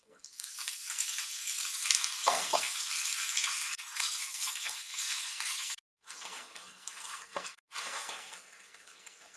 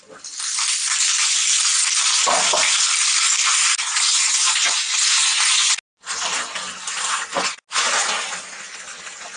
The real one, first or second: second